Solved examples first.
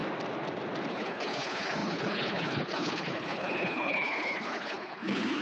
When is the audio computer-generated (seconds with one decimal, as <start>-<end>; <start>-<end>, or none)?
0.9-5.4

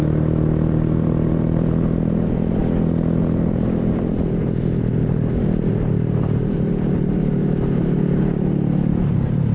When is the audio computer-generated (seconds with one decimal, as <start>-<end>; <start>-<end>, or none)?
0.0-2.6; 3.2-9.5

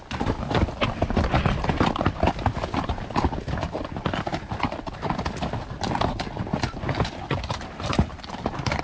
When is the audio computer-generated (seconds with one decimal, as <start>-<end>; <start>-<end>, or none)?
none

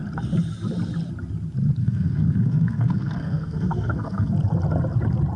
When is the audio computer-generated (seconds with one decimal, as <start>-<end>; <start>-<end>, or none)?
1.8-4.3

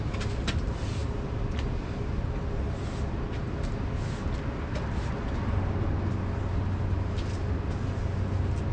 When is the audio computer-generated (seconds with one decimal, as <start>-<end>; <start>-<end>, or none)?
none

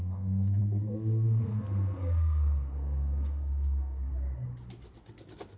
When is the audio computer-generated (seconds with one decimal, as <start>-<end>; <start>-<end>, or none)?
0.0-4.1

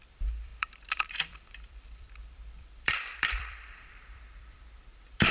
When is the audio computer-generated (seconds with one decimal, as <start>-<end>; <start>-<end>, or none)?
0.0-5.3

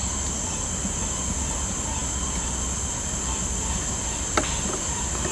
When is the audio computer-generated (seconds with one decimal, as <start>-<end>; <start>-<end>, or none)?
none